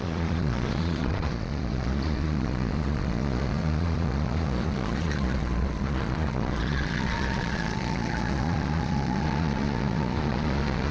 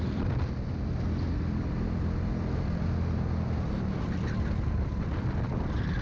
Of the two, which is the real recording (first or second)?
second